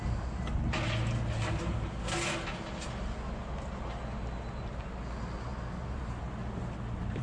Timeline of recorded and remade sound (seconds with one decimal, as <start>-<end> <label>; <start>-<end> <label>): 0.0-7.2 recorded